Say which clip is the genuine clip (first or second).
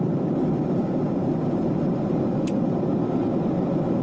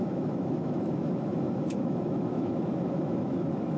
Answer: first